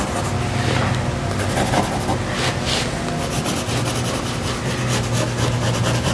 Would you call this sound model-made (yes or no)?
no